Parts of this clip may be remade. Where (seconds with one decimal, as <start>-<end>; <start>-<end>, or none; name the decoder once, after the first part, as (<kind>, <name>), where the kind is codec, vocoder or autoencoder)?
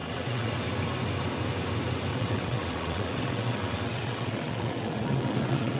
0.0-0.5 (vocoder, WaveNeXt); 2.1-5.8